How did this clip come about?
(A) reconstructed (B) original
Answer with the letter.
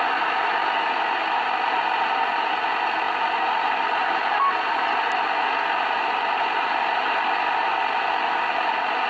B